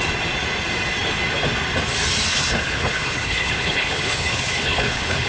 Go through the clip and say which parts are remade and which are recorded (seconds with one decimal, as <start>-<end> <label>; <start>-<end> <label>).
0.0-2.3 recorded; 2.3-5.3 remade